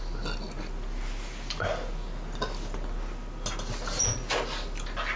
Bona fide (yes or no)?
yes